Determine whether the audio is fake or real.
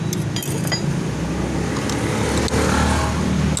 real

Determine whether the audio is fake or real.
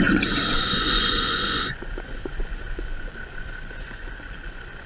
fake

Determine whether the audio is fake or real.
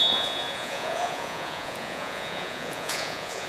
fake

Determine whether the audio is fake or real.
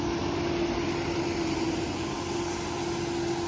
real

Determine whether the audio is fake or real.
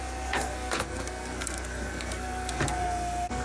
fake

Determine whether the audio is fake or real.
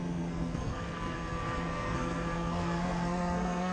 fake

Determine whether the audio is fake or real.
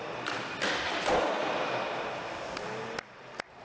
real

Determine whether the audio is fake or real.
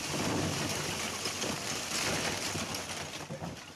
real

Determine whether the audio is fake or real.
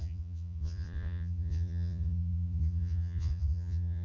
fake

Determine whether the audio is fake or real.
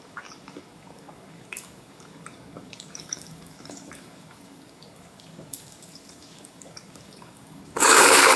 fake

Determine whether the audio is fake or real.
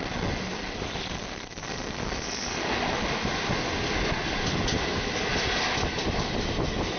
real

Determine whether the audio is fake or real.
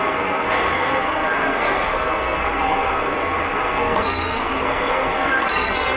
fake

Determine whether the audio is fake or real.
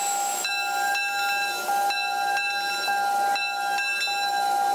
real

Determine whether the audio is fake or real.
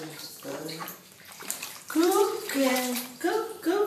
fake